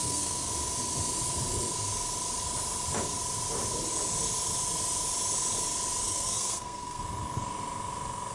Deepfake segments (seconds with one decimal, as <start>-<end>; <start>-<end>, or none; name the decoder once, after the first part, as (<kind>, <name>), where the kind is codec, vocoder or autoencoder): 0.0-0.5 (codec, SNAC); 6.0-7.0